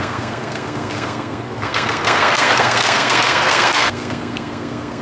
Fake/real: fake